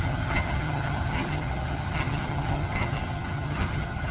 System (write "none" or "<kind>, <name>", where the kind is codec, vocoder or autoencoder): vocoder, HiFi-GAN